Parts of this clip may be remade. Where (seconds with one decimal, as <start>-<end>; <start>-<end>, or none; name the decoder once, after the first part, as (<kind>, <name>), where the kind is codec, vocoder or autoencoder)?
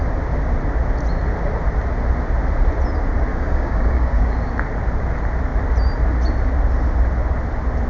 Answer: 3.3-4.3 (codec, DAC)